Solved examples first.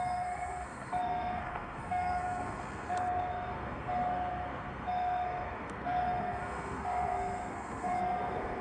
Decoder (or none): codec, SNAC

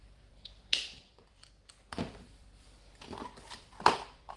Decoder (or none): vocoder, BigVGAN v2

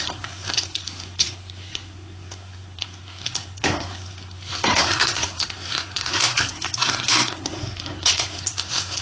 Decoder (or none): codec, SNAC